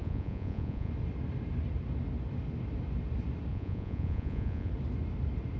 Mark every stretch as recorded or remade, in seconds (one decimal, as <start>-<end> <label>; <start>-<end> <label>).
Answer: 0.0-0.9 remade; 0.9-3.5 recorded; 3.5-4.7 remade; 4.7-5.6 recorded